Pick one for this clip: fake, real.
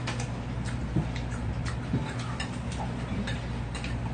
real